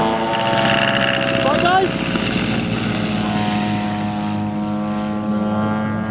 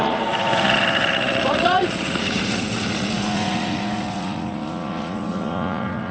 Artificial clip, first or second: second